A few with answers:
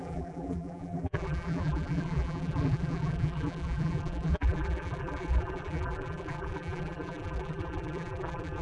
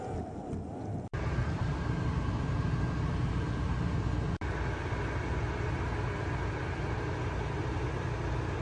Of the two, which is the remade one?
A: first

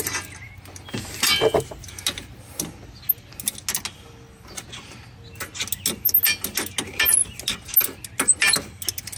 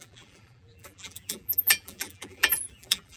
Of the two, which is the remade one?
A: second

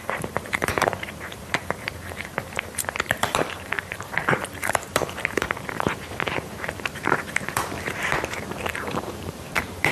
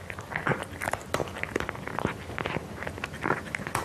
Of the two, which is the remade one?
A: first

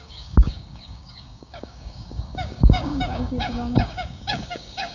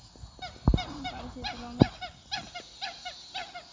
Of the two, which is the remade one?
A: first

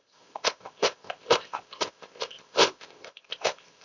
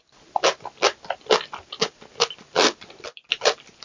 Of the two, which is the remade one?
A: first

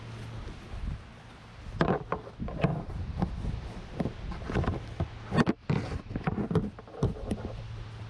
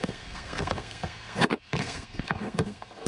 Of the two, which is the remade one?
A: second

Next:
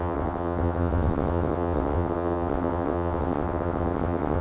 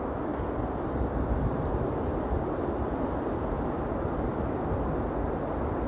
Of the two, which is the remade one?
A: first